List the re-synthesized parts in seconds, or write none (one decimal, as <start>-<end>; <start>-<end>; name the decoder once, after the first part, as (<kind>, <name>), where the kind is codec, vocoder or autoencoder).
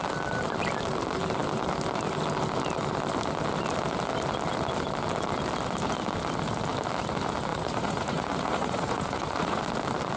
7.5-9.6 (vocoder, Vocos)